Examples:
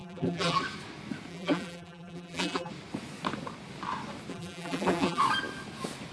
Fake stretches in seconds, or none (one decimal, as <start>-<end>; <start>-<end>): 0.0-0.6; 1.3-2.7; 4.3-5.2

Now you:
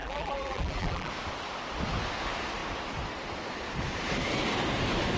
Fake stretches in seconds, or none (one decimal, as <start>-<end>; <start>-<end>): 0.0-1.1

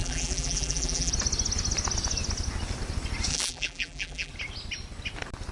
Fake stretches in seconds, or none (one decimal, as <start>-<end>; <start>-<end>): 0.0-1.1; 3.3-4.3